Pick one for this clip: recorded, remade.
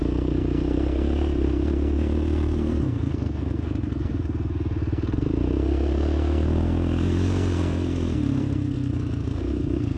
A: remade